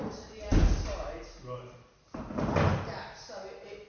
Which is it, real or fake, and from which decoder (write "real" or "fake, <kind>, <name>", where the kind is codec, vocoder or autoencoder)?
real